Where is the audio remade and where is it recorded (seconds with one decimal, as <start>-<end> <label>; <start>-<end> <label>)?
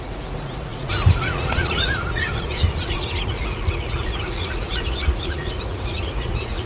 0.0-6.7 remade